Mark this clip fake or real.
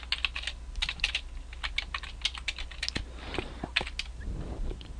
real